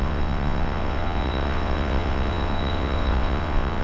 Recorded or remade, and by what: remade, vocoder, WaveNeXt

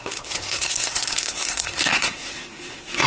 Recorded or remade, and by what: remade, codec, SNAC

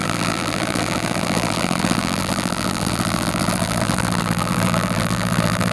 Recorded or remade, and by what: remade, vocoder, BigVGAN v2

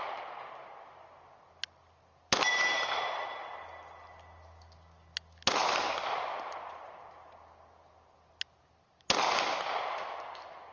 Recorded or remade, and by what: recorded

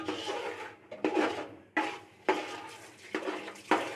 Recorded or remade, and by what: recorded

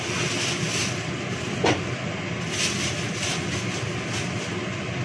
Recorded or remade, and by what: recorded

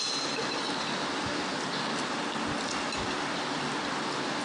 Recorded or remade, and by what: recorded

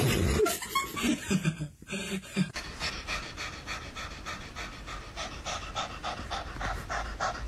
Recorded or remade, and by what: recorded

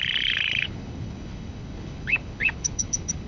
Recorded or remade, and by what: remade, codec, HILCodec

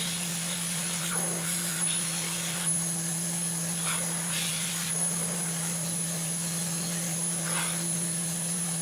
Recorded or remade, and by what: recorded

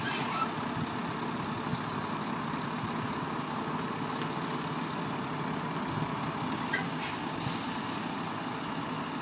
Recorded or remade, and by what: recorded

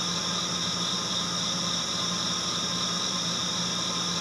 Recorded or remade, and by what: recorded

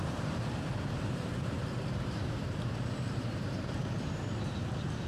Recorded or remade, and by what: remade, vocoder, BigVGAN v2